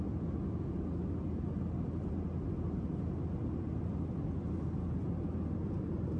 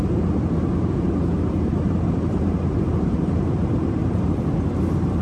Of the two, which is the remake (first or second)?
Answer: second